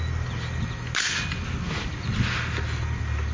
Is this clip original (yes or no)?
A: yes